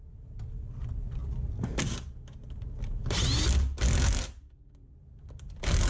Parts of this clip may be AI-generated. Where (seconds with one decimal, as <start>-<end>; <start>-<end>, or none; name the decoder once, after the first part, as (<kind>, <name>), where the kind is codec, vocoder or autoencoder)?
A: none